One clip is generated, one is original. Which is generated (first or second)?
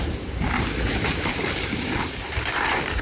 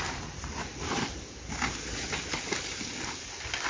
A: first